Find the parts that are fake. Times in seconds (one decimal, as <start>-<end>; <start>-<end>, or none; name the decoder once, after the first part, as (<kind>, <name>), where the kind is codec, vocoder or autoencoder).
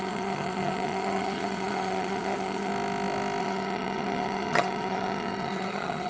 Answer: 0.0-2.7 (vocoder, HiFi-GAN); 3.4-6.1